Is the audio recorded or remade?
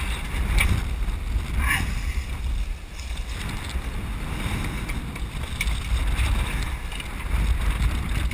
recorded